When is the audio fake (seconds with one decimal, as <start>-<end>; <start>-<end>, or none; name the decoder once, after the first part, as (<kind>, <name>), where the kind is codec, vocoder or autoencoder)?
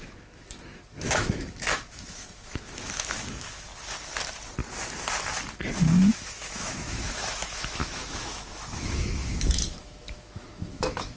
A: 0.0-3.7 (autoencoder, DAC-VAE); 5.7-11.2